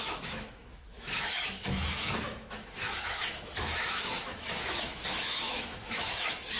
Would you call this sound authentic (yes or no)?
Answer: no